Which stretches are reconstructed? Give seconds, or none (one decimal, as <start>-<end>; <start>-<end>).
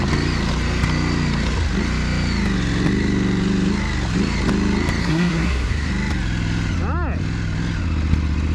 5.0-5.9